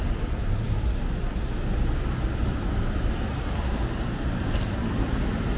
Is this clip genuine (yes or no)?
yes